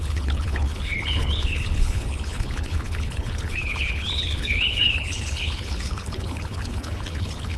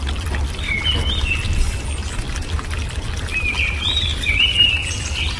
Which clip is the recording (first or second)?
second